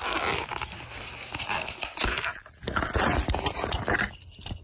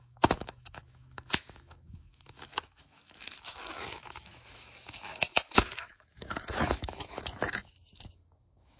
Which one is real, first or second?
first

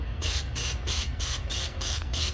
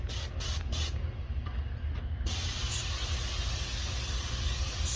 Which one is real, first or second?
second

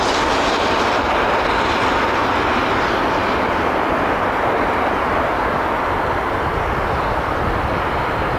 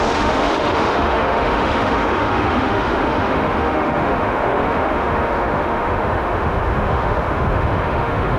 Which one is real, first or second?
first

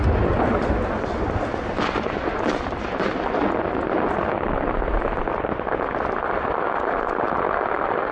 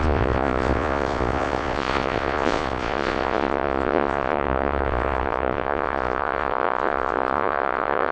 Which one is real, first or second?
first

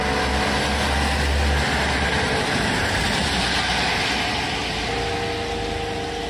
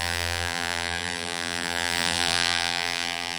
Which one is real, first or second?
first